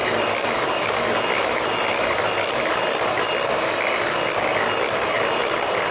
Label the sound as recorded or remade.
recorded